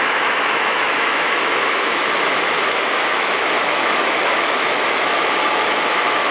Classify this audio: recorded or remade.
remade